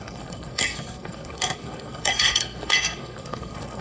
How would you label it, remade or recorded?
remade